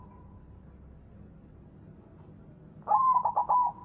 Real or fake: real